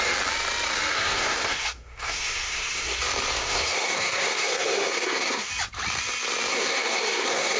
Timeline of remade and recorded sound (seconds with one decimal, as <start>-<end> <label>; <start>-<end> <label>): 0.0-0.9 recorded; 0.9-3.0 remade; 3.0-3.4 recorded; 3.4-5.5 remade; 5.5-6.5 recorded; 6.5-7.6 remade